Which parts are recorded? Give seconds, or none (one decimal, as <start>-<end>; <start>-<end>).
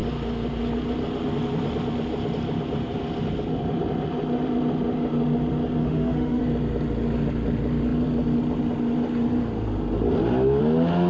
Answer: 0.0-5.8; 6.4-11.1